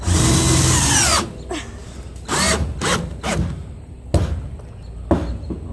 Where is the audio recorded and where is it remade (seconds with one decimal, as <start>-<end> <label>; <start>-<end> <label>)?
0.0-5.7 recorded